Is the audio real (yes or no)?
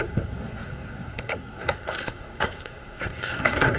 no